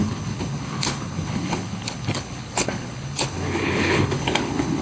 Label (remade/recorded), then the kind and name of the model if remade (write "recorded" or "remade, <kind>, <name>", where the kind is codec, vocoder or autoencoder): remade, codec, HILCodec